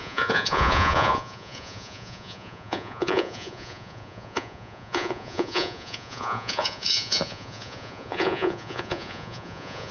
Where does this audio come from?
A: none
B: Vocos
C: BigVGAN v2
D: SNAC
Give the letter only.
B